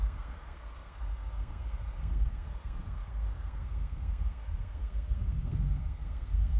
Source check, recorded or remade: remade